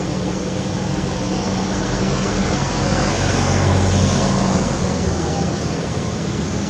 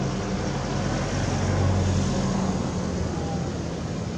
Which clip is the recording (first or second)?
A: second